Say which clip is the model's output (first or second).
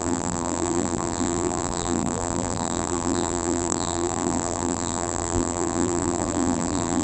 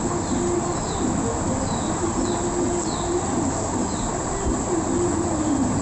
first